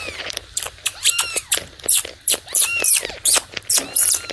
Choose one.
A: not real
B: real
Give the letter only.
A